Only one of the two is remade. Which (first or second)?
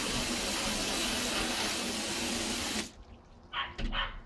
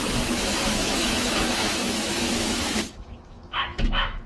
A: second